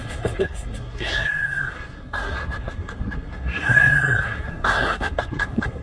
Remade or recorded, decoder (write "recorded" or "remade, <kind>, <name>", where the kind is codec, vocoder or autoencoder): remade, codec, SNAC